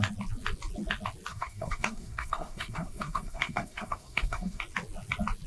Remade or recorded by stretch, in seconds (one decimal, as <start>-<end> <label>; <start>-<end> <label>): 0.0-1.3 recorded; 1.3-4.6 remade; 4.6-5.5 recorded